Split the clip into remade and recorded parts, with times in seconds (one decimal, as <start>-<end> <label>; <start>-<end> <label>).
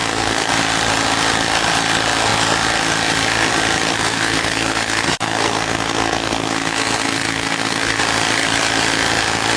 0.0-0.5 remade; 0.5-3.9 recorded; 3.9-8.0 remade; 8.0-9.6 recorded